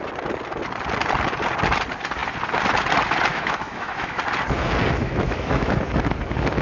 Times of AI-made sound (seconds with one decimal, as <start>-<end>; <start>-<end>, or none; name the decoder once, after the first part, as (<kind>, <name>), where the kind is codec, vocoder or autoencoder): 3.3-4.2 (autoencoder, DAC-VAE); 5.0-5.8